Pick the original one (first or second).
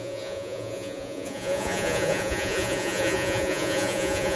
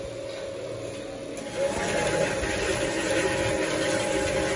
second